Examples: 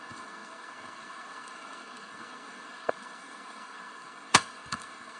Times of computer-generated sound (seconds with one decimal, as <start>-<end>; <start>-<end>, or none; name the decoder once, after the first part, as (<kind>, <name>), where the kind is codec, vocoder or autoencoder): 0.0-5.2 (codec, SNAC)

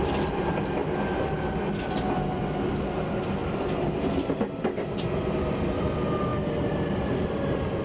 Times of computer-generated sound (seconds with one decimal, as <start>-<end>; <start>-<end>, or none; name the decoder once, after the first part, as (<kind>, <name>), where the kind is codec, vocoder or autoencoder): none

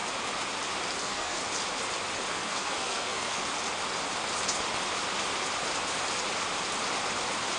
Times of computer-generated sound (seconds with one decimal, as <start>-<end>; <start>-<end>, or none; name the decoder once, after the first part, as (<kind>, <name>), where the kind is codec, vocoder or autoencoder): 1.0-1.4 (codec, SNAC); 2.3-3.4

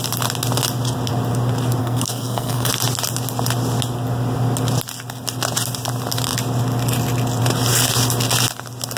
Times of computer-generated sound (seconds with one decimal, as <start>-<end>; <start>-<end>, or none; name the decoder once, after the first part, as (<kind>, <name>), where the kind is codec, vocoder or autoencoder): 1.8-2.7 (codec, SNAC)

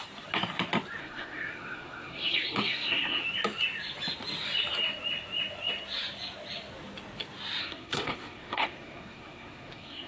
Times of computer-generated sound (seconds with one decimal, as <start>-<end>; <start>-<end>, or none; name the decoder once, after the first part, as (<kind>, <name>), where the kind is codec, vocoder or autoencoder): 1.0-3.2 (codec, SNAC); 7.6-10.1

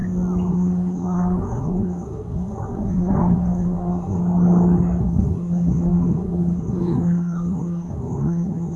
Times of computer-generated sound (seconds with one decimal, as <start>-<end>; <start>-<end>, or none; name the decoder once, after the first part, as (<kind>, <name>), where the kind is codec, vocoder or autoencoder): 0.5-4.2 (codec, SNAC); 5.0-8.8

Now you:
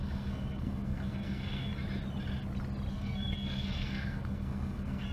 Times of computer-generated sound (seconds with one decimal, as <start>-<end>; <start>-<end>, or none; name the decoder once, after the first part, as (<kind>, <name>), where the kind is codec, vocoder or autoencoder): 0.0-1.7 (codec, SNAC); 2.9-5.1

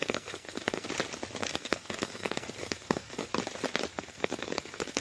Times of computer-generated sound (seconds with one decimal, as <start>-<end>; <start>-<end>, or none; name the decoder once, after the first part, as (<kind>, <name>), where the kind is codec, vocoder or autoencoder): 0.0-0.9 (codec, SNAC); 1.4-3.3; 3.9-5.0